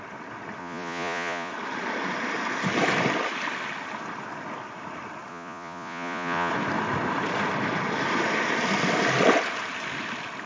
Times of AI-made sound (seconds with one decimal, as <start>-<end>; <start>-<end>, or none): 0.6-1.5; 5.3-6.5